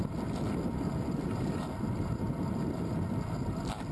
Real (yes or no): yes